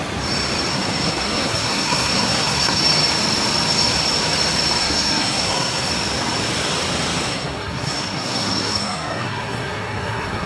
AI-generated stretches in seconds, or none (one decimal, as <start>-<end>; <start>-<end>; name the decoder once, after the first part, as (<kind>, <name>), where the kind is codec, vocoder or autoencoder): 0.7-2.8 (codec, SNAC); 4.8-5.9; 7.3-10.5